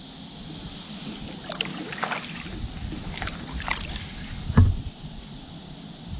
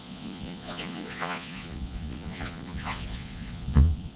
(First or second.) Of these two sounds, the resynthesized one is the second